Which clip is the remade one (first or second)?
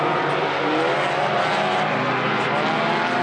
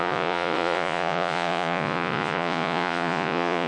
second